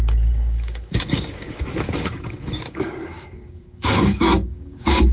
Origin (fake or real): fake